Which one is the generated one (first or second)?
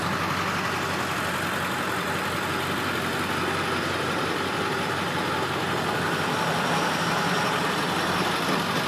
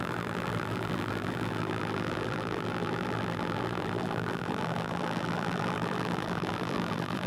second